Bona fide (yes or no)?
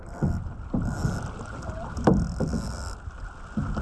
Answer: yes